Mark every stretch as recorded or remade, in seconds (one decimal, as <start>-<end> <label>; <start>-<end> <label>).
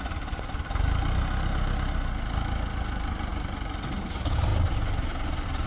0.0-5.7 recorded